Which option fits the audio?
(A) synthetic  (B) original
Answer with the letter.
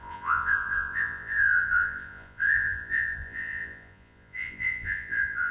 A